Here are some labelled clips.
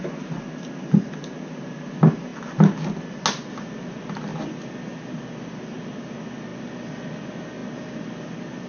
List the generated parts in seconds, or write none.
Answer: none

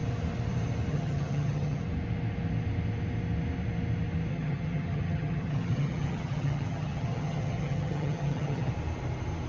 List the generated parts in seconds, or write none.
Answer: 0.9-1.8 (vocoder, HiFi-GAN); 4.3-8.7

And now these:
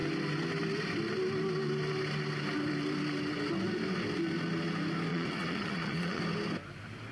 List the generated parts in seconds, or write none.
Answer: 5.1-6.2 (vocoder, Vocos)